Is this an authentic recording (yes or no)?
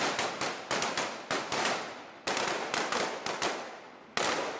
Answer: yes